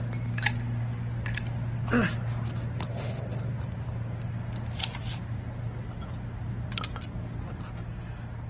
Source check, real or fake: real